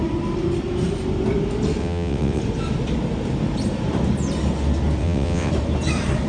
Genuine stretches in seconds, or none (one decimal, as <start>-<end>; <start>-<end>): 0.0-1.8; 2.4-5.0; 5.5-6.3